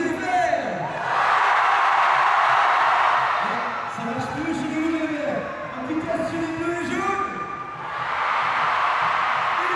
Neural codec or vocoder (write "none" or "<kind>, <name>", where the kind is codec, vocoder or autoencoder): none